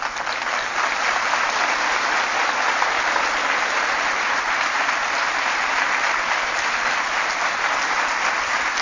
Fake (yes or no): no